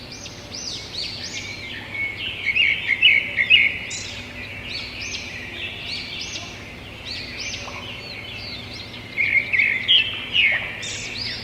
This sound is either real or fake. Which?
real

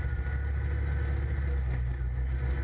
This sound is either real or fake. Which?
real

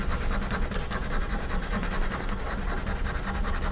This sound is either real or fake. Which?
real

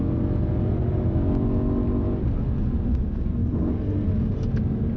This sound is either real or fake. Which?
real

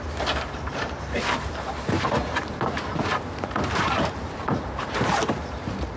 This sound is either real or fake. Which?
fake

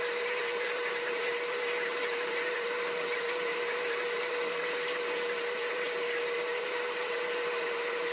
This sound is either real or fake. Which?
fake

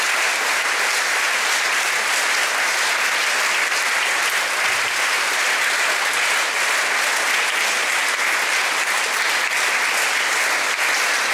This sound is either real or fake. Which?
real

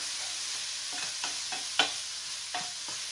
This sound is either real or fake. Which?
real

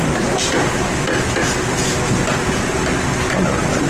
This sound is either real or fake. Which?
real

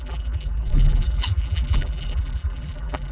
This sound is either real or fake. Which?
fake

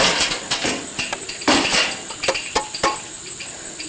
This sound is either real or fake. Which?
fake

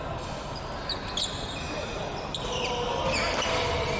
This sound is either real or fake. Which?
real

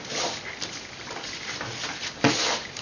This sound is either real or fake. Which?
real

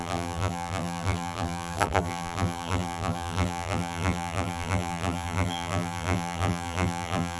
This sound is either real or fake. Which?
fake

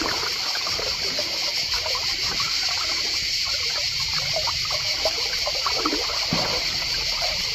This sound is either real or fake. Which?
fake